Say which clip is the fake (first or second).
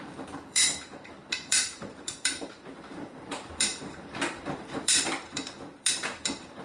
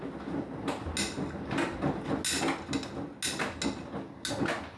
first